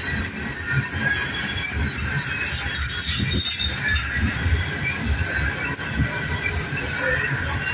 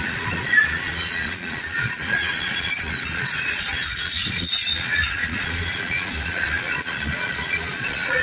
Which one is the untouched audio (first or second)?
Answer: first